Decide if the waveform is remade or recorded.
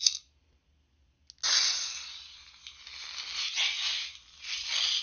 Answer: recorded